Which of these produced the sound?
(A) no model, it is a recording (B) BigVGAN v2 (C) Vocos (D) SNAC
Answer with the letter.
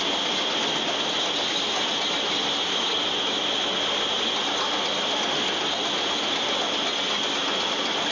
A